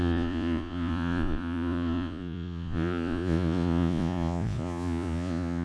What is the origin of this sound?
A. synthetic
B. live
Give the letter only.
A